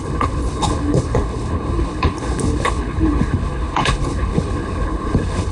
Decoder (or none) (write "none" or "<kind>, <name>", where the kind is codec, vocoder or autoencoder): codec, HILCodec